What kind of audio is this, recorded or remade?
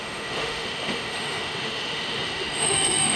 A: remade